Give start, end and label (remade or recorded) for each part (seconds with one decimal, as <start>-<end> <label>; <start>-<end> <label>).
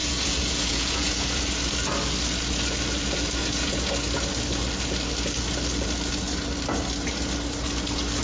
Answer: 0.0-1.4 remade; 1.4-3.4 recorded; 3.4-3.9 remade; 3.9-8.2 recorded